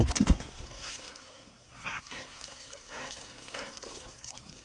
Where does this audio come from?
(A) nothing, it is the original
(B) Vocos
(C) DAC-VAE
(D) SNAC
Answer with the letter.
D